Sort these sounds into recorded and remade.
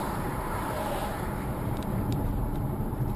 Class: remade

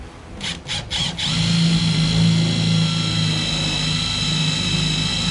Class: recorded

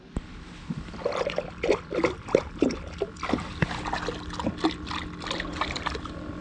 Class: recorded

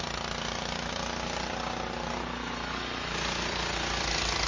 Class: recorded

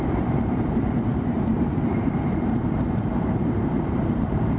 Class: remade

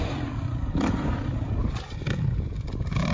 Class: recorded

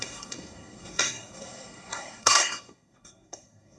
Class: remade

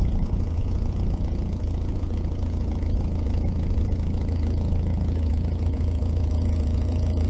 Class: remade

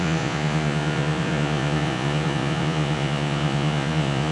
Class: remade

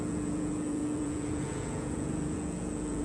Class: remade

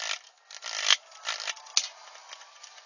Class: recorded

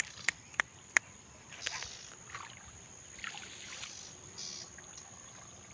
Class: recorded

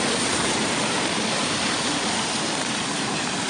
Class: remade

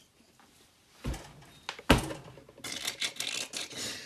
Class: recorded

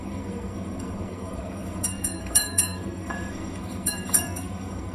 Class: remade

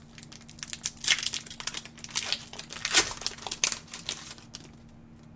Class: recorded